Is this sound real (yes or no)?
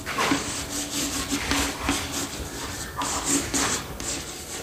no